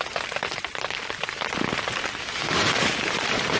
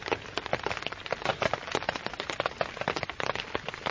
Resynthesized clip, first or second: second